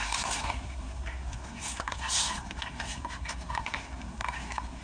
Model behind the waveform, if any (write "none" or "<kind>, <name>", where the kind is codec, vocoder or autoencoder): codec, SNAC